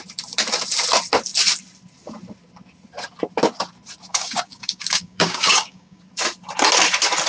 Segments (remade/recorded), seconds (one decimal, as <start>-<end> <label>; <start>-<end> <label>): 0.0-4.1 recorded; 4.1-6.0 remade; 6.0-7.3 recorded